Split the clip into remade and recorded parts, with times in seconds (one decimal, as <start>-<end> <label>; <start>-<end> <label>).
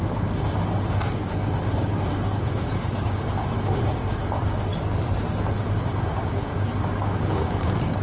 0.0-4.7 remade; 4.7-5.5 recorded; 5.5-8.0 remade